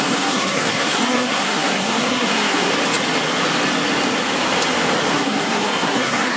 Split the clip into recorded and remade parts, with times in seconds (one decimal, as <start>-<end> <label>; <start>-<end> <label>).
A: 0.0-2.7 remade; 2.7-5.1 recorded; 5.1-6.4 remade

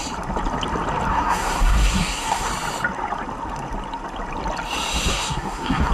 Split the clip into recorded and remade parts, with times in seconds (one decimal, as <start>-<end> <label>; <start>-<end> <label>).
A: 0.0-1.1 recorded; 1.1-2.5 remade; 2.5-5.1 recorded; 5.1-5.9 remade

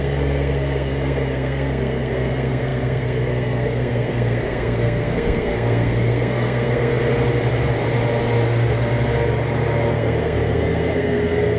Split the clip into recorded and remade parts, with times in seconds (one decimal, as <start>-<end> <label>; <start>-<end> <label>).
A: 0.0-7.0 remade; 7.0-9.9 recorded; 9.9-11.6 remade